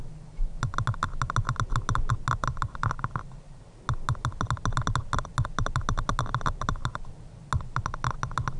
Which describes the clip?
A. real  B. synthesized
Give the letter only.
A